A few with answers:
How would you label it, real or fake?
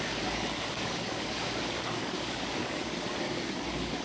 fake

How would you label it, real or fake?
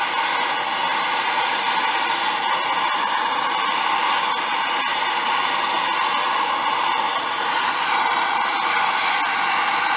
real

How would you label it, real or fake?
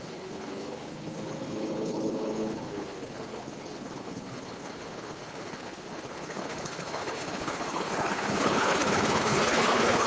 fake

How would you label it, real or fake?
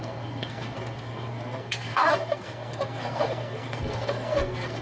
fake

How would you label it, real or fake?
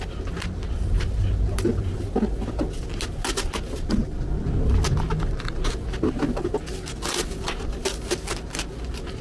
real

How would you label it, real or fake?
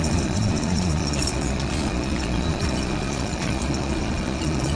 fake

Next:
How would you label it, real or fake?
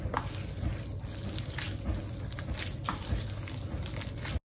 real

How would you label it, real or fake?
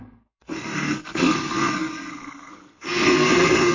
fake